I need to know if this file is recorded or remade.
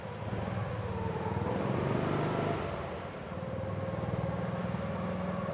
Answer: recorded